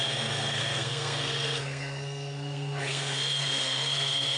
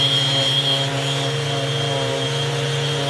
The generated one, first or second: first